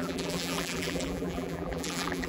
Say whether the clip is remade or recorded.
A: remade